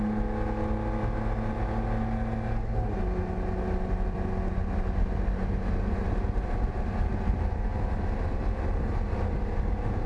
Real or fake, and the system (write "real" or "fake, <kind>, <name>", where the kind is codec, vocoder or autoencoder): real